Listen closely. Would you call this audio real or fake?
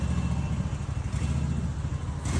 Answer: real